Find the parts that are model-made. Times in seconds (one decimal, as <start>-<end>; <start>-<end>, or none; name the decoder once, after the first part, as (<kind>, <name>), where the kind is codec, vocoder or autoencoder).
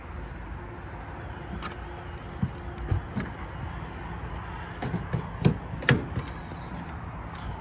none